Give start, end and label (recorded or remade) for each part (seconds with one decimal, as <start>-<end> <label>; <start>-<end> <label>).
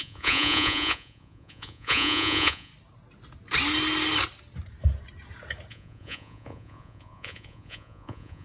0.0-2.7 remade; 2.7-5.7 recorded; 5.7-8.4 remade